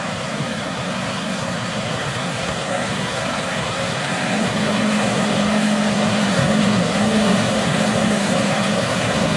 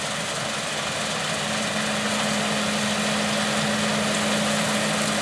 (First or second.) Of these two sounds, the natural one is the second